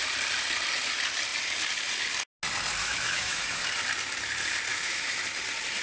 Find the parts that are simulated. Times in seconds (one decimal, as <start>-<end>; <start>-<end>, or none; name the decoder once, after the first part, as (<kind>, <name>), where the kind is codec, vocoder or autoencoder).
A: 2.8-3.6 (autoencoder, DAC-VAE); 4.7-5.2